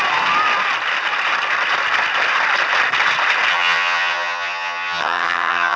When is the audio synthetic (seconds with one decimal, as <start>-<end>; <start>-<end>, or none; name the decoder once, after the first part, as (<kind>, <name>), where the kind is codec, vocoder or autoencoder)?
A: 3.5-5.8 (vocoder, HiFi-GAN)